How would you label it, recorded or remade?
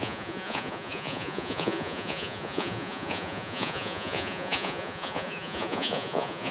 remade